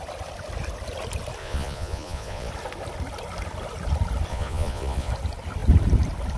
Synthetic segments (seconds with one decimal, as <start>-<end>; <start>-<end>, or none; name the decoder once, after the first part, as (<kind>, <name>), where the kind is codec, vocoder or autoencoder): 1.4-2.5 (vocoder, Vocos); 4.3-5.1